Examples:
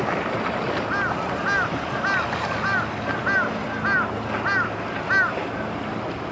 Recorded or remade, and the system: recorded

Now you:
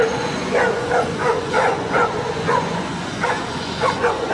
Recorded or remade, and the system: remade, vocoder, Vocos